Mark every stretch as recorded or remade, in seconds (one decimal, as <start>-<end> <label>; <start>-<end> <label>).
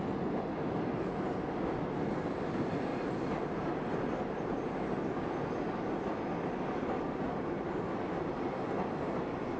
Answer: 0.0-9.6 recorded